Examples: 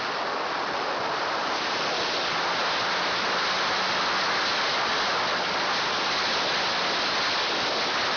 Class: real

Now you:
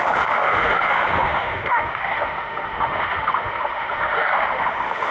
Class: fake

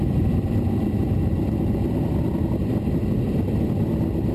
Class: real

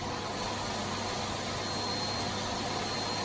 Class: real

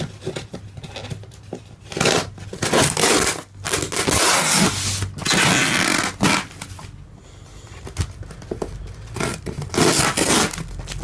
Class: real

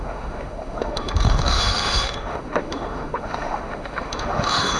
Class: fake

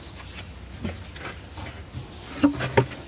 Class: real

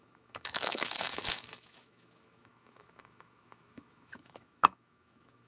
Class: fake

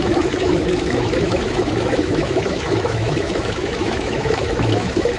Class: fake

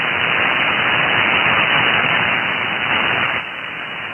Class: fake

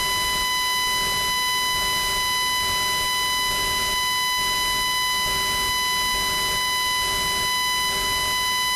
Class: real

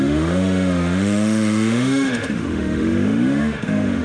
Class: fake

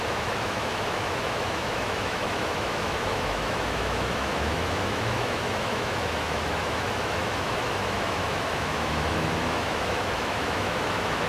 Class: fake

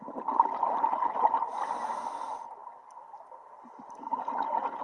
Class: real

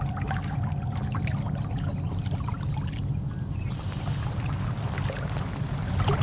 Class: real